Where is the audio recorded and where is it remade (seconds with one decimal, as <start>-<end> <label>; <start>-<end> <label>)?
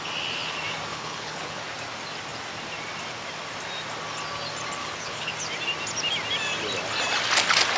0.0-0.9 recorded; 0.9-1.6 remade; 1.6-4.8 recorded; 4.8-5.3 remade; 5.3-7.8 recorded